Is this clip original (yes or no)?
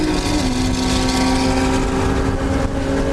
yes